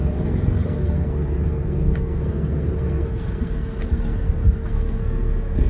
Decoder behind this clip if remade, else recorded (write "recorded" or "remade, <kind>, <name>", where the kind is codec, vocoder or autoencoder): remade, codec, SNAC